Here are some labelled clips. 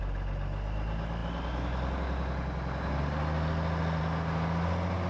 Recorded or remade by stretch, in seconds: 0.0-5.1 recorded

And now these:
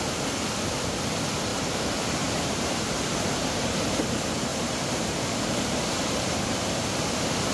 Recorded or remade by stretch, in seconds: 0.0-1.5 recorded; 1.5-4.0 remade; 4.0-4.5 recorded; 4.5-6.1 remade; 6.1-7.5 recorded

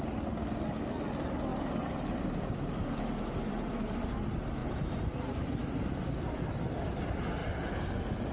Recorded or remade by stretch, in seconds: 0.0-1.5 recorded; 1.5-4.1 remade; 4.1-4.6 recorded; 4.6-5.6 remade; 5.6-8.3 recorded